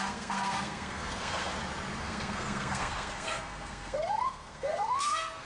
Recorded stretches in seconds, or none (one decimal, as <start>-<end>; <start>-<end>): 1.5-2.0